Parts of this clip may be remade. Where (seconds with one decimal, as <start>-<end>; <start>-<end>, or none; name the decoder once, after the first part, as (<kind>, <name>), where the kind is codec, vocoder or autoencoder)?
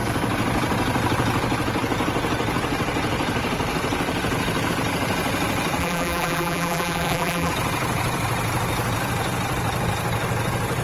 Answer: 5.8-7.5 (vocoder, BigVGAN v2)